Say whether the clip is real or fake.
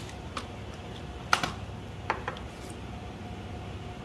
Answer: real